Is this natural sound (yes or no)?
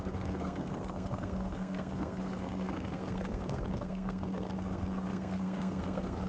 no